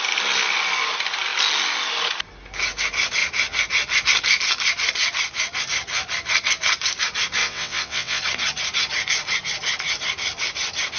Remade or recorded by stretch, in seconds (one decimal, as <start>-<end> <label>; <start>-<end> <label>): 0.0-7.4 recorded; 7.4-8.2 remade; 8.2-11.0 recorded